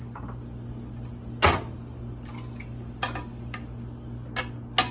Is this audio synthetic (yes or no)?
no